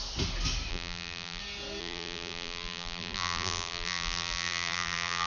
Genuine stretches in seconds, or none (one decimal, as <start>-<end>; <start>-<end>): 0.0-0.7; 1.4-1.8